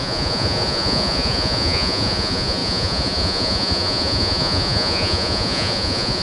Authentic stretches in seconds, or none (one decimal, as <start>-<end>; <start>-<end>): none